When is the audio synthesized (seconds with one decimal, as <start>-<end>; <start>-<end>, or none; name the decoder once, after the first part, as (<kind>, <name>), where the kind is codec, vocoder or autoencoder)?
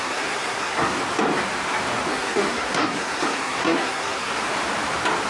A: 0.0-0.9 (codec, SNAC); 2.1-4.3